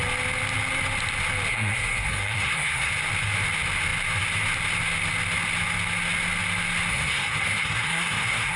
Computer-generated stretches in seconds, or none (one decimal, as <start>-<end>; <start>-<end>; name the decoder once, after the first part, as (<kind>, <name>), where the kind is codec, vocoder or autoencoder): 1.5-2.9 (codec, SNAC); 6.9-8.6